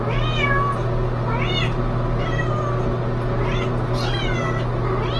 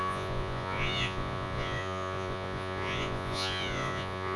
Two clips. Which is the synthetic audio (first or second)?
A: second